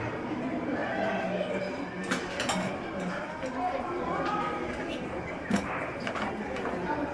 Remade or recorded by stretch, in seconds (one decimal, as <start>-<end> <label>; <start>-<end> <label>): 0.0-7.1 recorded